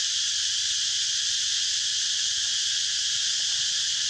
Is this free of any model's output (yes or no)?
yes